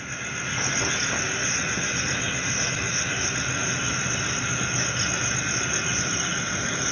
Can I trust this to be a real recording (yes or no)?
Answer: yes